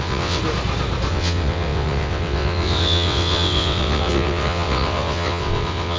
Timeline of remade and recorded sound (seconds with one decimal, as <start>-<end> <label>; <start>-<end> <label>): 0.0-0.4 remade; 0.4-1.1 recorded; 1.1-6.0 remade